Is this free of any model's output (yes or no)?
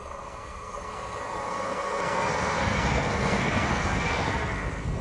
no